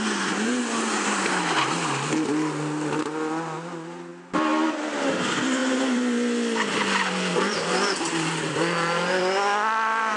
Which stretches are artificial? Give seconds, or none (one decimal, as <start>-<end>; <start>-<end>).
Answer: 5.6-9.2